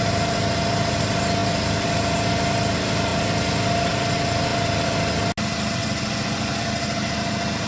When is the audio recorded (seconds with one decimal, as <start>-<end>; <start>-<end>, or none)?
0.0-5.8; 6.6-7.7